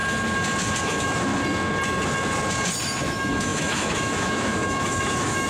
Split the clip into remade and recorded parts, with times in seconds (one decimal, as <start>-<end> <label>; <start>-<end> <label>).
0.0-0.8 recorded; 0.8-1.3 remade; 1.3-3.0 recorded; 3.0-5.5 remade